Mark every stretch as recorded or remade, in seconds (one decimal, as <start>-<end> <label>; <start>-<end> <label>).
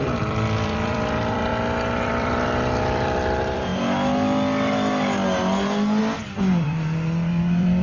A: 0.0-3.7 remade; 3.7-6.0 recorded; 6.0-7.8 remade